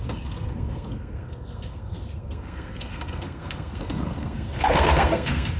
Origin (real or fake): fake